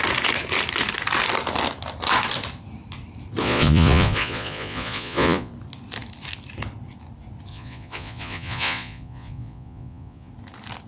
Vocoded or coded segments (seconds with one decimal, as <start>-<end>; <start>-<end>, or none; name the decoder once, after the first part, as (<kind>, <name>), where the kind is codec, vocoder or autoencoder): 3.4-5.5 (vocoder, Vocos); 7.5-10.3